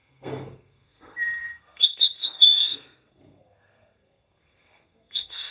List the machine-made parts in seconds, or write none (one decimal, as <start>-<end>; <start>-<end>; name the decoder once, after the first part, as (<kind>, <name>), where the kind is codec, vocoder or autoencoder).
0.0-5.5 (codec, SNAC)